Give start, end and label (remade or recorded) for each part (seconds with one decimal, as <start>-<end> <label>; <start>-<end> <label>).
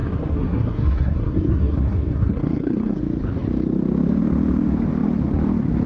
0.0-3.0 remade; 3.0-5.9 recorded